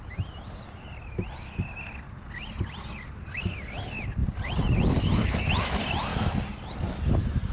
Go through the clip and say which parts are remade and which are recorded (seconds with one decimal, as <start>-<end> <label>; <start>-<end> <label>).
0.0-7.5 recorded